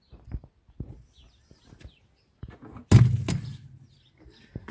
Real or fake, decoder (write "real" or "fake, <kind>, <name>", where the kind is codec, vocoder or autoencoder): real